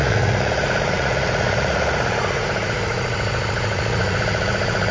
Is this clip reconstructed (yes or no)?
yes